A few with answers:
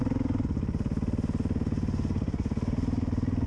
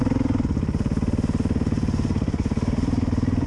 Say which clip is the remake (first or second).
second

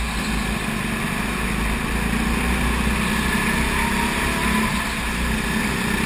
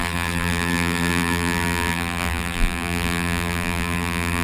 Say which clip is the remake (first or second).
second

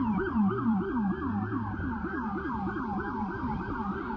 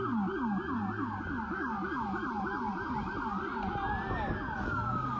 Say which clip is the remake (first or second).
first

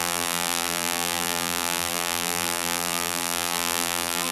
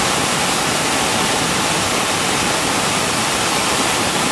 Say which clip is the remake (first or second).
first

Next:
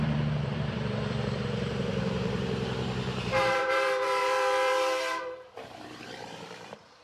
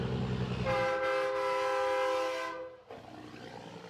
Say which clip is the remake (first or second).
first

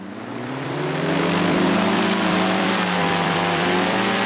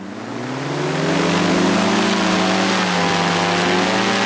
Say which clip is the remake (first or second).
first